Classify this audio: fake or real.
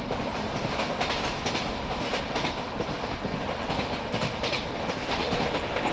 real